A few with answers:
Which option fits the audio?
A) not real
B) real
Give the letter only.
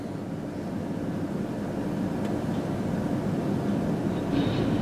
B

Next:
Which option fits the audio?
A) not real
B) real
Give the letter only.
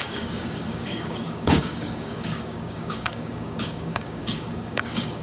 A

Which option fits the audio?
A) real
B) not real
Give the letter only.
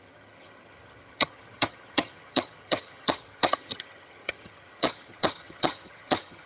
B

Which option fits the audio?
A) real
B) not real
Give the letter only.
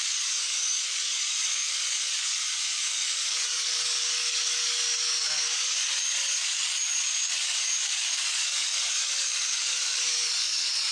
B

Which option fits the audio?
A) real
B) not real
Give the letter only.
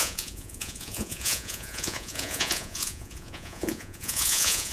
B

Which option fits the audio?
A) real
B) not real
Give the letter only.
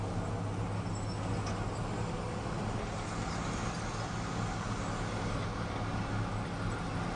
A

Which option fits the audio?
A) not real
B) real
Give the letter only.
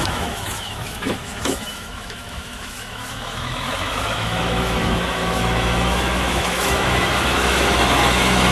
A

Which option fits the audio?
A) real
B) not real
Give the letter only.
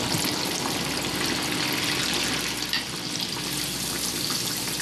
A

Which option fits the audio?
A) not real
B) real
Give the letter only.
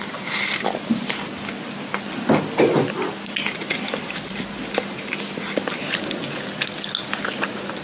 B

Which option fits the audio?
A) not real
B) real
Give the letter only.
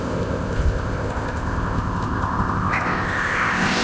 A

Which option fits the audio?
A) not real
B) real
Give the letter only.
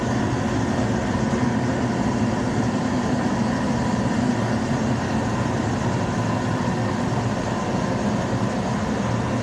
B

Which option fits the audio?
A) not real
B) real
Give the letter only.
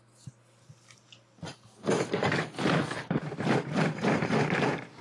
A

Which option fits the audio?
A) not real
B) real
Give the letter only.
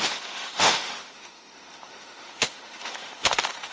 A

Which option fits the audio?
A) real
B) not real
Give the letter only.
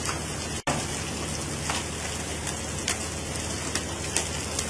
A